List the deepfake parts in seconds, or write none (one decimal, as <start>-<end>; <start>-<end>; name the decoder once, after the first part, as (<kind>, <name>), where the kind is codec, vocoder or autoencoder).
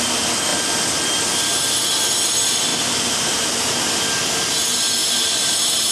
5.0-5.9 (vocoder, BigVGAN v2)